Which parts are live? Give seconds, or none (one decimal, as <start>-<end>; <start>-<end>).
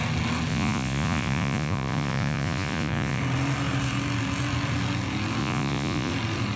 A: 0.0-0.5; 3.2-5.4; 6.1-6.6